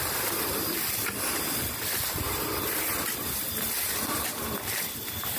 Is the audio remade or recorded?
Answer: recorded